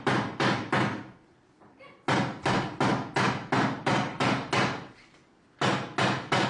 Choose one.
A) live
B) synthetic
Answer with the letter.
A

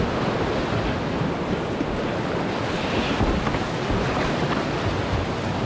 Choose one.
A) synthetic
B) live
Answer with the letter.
B